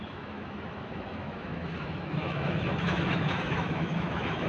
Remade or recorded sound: remade